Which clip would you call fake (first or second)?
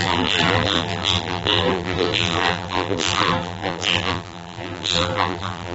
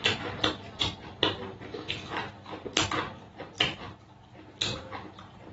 first